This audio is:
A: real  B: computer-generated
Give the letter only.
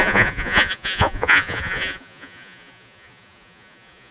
B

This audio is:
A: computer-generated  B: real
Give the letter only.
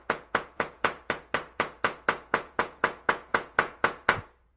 A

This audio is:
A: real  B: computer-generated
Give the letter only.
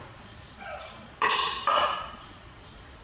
B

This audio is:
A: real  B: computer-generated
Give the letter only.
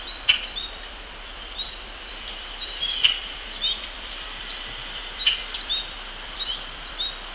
A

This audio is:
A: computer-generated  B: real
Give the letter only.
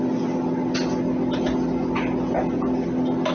B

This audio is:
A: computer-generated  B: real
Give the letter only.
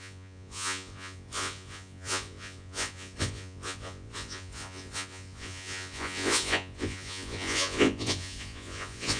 A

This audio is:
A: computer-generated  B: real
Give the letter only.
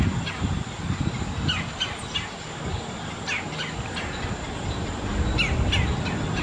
B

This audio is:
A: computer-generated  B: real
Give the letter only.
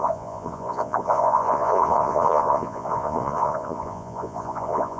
A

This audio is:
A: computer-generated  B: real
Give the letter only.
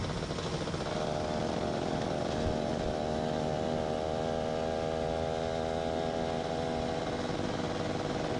B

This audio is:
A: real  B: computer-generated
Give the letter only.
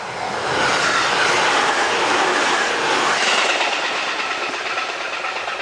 A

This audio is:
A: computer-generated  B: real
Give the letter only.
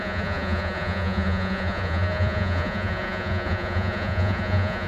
A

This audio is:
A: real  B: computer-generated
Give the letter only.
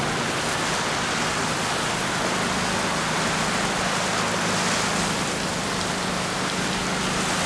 A